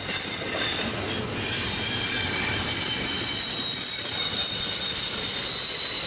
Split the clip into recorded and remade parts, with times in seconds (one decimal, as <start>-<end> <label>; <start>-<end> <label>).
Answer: 0.0-4.2 recorded; 4.2-6.1 remade